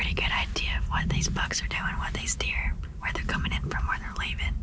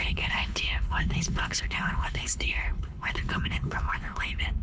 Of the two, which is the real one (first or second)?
first